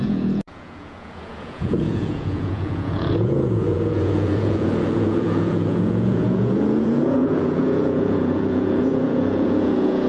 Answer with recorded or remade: remade